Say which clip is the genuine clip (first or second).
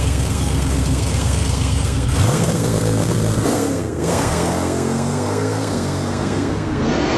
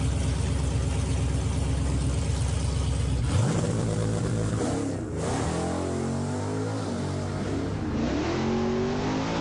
second